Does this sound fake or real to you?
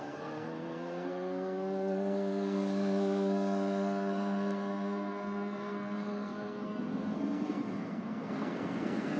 fake